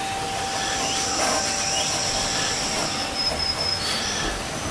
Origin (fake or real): fake